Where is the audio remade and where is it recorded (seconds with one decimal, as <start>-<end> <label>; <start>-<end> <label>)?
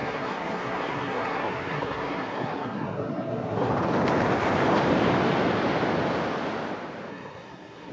0.0-3.7 remade; 3.7-7.1 recorded; 7.1-7.9 remade